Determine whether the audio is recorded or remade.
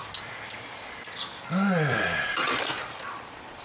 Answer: remade